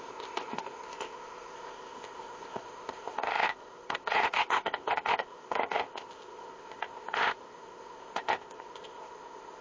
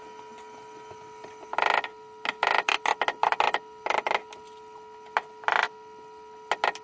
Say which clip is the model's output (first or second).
first